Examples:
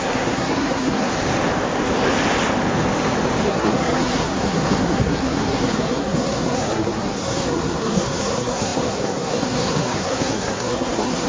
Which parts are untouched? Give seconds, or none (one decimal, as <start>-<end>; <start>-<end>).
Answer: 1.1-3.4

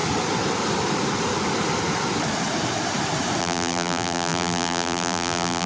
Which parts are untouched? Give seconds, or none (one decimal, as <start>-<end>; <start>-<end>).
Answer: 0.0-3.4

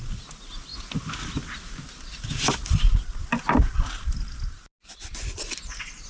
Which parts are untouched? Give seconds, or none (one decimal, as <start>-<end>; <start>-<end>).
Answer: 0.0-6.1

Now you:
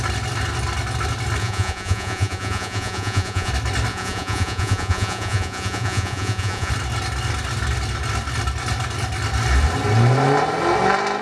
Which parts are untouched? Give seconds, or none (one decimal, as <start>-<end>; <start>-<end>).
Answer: 0.0-1.4; 3.5-3.9; 6.7-11.2